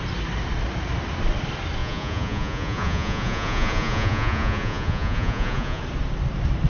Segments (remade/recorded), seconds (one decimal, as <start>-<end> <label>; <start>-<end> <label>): 0.0-1.8 recorded; 1.8-5.8 remade; 5.8-6.7 recorded